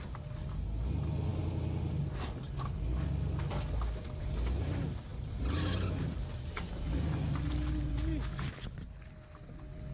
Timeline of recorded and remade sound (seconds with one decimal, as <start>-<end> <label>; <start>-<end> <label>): 0.0-9.9 recorded